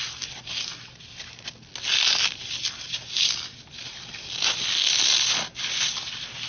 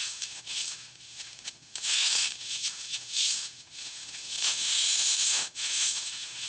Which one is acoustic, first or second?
first